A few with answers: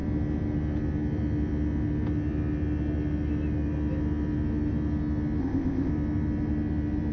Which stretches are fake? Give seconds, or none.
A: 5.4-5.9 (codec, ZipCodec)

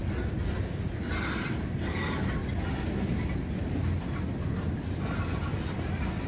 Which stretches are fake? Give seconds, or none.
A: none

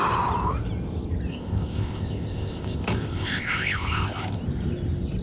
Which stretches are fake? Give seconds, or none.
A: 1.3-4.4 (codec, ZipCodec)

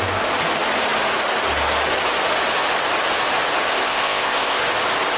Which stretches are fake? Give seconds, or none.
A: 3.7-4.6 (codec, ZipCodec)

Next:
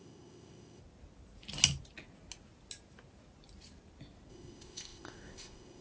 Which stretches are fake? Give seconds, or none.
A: 0.0-0.8 (codec, ZipCodec); 4.3-5.8

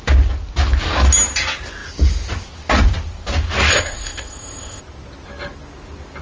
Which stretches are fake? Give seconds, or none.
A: 3.7-4.8 (codec, ZipCodec)

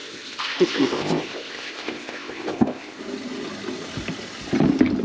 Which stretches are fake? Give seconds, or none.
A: 0.0-3.0 (codec, ZipCodec)